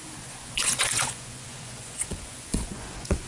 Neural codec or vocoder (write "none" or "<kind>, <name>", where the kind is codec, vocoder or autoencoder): vocoder, Vocos